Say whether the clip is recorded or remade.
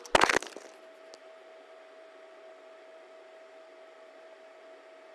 recorded